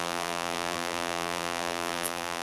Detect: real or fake fake